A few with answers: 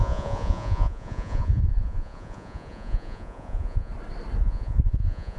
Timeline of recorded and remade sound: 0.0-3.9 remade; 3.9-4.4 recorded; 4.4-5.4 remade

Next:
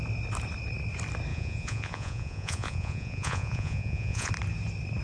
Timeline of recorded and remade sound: 0.0-1.3 recorded; 1.3-4.3 remade; 4.3-5.0 recorded

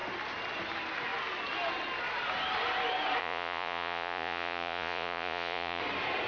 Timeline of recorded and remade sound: 0.0-3.2 recorded; 3.2-5.8 remade; 5.8-6.3 recorded

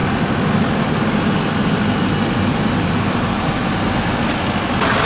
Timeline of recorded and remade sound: 0.0-5.1 recorded

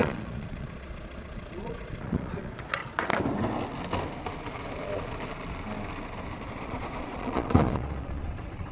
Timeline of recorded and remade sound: 0.0-2.8 remade; 2.8-6.5 recorded; 6.5-8.7 remade